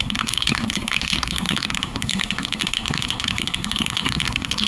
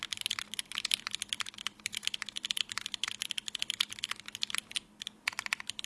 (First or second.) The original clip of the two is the second